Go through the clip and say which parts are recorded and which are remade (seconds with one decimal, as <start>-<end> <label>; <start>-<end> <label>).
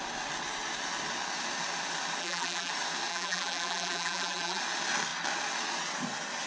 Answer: 0.0-2.2 recorded; 2.2-2.7 remade; 2.7-3.1 recorded; 3.1-4.6 remade; 4.6-6.5 recorded